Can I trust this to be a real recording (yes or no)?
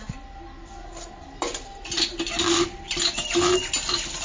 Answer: yes